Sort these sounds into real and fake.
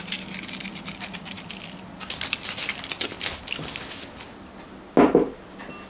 real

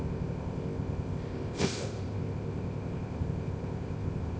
fake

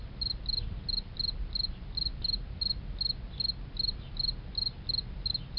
real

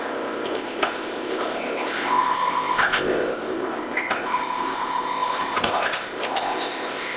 fake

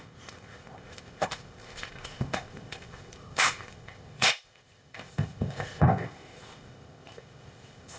fake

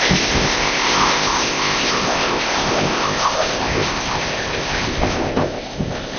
fake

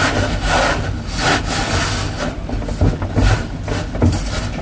real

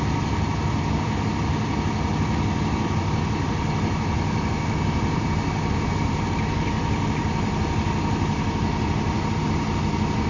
real